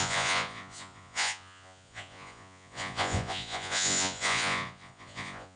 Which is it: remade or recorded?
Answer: remade